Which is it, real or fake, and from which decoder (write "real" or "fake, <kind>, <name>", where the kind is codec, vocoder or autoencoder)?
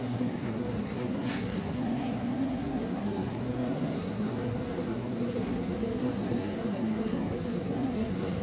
fake, codec, SNAC